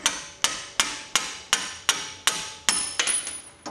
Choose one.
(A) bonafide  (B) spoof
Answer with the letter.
A